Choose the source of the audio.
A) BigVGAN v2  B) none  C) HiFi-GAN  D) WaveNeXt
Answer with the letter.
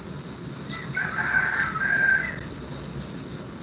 B